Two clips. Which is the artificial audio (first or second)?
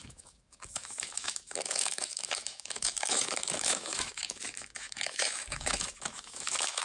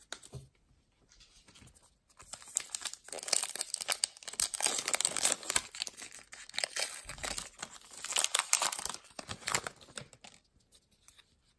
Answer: first